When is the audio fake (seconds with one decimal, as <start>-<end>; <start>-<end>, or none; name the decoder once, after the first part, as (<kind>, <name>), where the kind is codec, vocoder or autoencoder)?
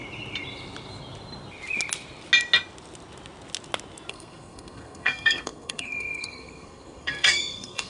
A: 4.1-7.9 (codec, SNAC)